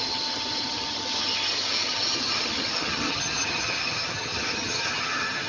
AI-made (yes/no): yes